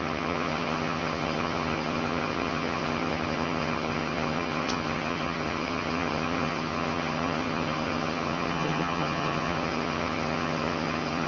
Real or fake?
fake